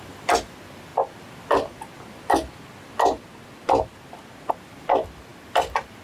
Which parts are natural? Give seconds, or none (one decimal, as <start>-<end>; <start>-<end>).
0.9-4.5